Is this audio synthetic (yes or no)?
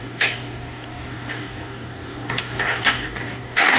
yes